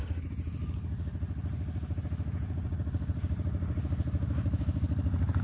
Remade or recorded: recorded